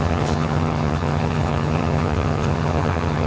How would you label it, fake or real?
fake